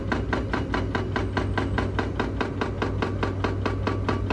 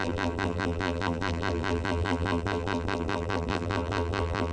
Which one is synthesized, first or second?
second